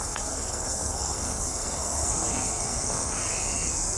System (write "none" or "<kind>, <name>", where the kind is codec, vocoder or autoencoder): codec, SNAC